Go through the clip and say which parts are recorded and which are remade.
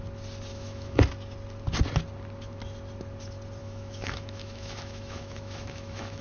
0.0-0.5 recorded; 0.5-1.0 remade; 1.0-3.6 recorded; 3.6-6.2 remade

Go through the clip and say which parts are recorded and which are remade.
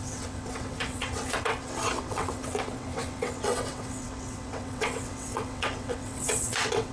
0.0-6.9 remade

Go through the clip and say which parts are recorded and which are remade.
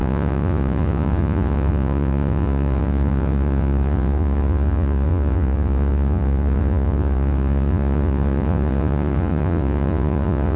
0.0-10.6 remade